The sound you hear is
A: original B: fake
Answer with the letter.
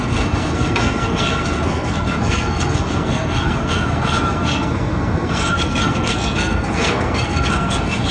B